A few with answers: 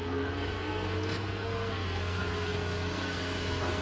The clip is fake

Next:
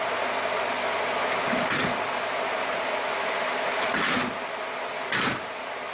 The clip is real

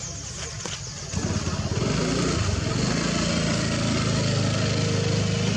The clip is real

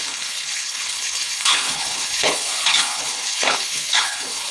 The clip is fake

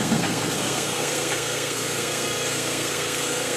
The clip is fake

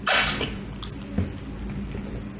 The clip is real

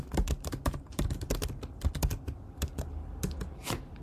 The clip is real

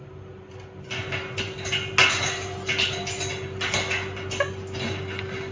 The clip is real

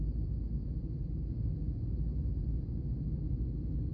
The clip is real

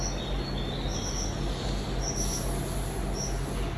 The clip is real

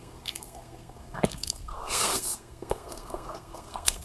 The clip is fake